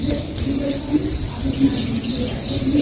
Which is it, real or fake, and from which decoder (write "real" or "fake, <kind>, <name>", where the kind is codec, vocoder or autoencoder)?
real